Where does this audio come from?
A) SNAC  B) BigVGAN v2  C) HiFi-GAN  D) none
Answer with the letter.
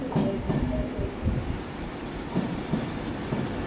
D